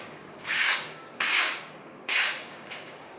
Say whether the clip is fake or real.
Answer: fake